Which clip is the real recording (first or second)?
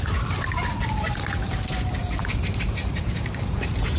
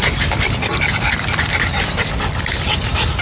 second